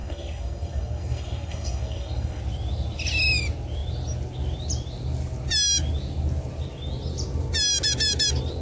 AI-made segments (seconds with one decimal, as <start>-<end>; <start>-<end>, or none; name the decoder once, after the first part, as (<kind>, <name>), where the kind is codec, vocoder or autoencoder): 0.0-2.4 (codec, SNAC)